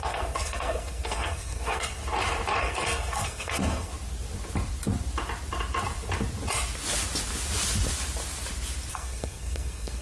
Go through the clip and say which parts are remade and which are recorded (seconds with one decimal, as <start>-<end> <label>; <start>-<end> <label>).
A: 0.0-2.0 remade; 2.0-2.6 recorded; 2.6-3.9 remade; 3.9-8.9 recorded; 8.9-10.0 remade